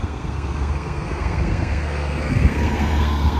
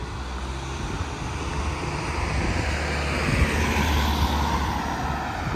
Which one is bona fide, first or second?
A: second